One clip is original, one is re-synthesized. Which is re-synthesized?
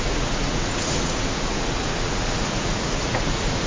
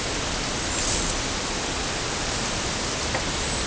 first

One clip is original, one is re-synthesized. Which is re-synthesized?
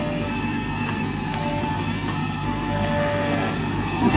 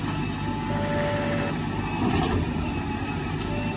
first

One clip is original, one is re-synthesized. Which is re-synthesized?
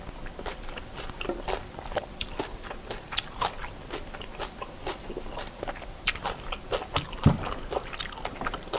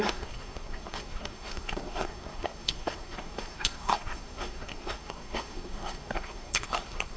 second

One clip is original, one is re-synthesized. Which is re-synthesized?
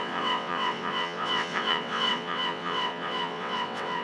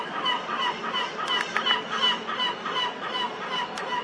first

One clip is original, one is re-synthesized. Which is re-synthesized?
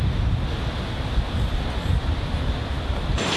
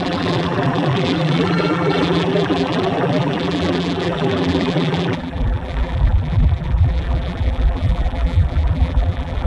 second